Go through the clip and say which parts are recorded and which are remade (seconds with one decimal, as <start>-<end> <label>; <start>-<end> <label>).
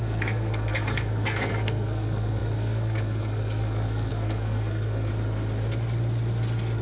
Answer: 0.0-5.1 remade; 5.1-6.8 recorded